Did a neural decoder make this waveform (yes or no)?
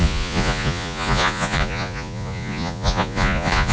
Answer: yes